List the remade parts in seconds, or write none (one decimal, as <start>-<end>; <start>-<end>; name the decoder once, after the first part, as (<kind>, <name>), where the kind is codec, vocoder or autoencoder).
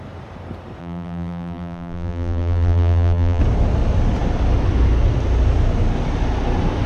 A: 0.8-3.4 (vocoder, BigVGAN v2)